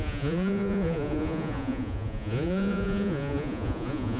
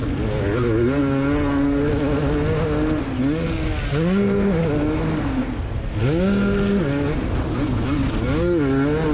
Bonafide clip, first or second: second